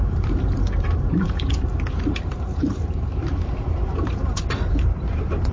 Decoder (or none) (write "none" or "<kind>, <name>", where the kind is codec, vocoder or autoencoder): vocoder, BigVGAN v2